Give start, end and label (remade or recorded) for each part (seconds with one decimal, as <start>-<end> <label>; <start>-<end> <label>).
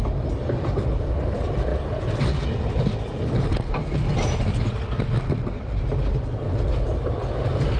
0.0-7.8 recorded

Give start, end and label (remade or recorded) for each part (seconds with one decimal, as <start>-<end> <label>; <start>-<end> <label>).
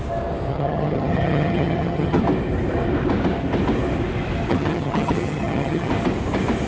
0.0-0.5 recorded; 0.5-2.2 remade; 2.2-4.5 recorded; 4.5-5.9 remade; 5.9-6.7 recorded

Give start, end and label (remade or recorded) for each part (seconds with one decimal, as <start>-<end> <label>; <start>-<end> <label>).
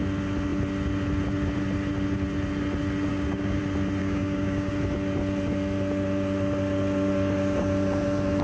0.0-3.1 recorded; 3.1-3.6 remade; 3.6-4.0 recorded; 4.0-4.7 remade; 4.7-8.4 recorded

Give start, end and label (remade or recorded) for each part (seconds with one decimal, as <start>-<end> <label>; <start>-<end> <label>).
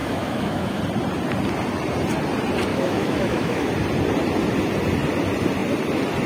0.0-0.8 remade; 0.8-2.7 recorded; 2.7-3.7 remade; 3.7-6.3 recorded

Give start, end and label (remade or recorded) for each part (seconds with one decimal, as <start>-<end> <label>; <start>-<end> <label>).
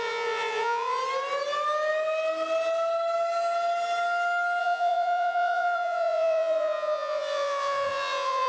0.0-1.0 remade; 1.0-4.6 recorded; 4.6-8.5 remade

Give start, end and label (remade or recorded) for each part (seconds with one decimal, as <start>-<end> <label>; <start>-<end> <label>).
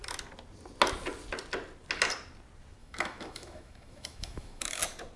0.0-2.8 recorded; 2.8-4.8 remade; 4.8-5.2 recorded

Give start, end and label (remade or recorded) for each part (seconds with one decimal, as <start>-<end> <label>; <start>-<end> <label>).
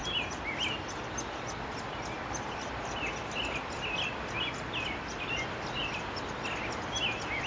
0.0-7.5 recorded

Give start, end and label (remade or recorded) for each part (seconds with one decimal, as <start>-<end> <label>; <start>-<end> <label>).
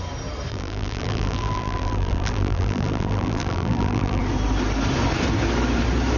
0.0-0.5 recorded; 0.5-4.2 remade; 4.2-6.2 recorded